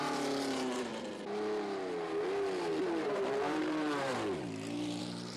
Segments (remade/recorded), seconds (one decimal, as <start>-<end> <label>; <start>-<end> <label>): 0.0-0.9 remade; 0.9-2.8 recorded; 2.8-4.1 remade; 4.1-5.0 recorded; 5.0-5.4 remade